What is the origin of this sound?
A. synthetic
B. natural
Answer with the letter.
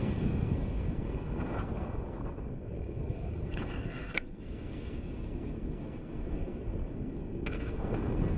A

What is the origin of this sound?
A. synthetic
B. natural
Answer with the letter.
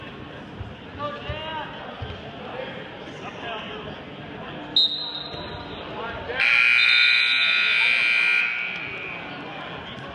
B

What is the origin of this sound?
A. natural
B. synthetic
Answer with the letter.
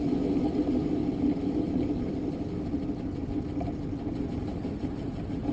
A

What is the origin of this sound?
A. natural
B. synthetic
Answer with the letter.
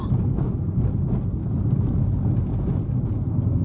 A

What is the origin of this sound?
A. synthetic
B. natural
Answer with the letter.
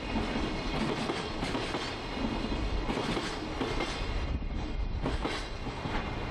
B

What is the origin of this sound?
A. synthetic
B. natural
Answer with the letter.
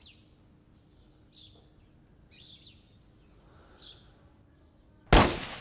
B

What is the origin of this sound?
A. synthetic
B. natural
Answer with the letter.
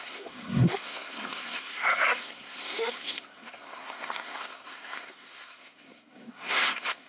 A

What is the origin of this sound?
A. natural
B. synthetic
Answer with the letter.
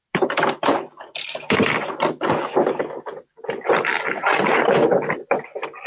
A